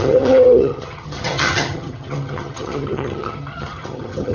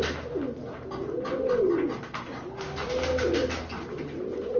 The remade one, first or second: first